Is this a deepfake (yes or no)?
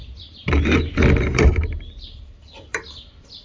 no